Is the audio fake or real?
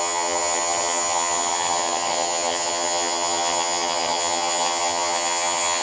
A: fake